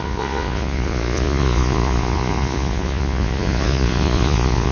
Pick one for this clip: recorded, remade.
remade